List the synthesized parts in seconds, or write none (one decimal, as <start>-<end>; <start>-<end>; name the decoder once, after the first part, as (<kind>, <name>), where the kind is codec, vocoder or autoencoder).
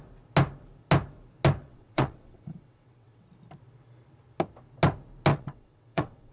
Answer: 1.6-3.3 (vocoder, WaveNeXt); 5.3-6.3